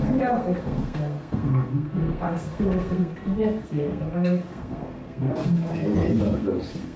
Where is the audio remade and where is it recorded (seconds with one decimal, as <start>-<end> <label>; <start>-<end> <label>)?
0.0-5.7 remade; 5.7-6.2 recorded; 6.2-7.0 remade